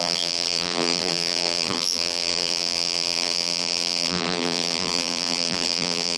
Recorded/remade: remade